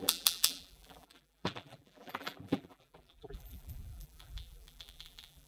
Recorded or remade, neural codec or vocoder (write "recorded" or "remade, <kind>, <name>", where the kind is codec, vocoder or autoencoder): remade, vocoder, BigVGAN v2